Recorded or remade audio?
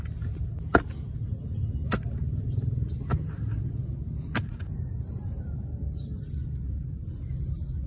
recorded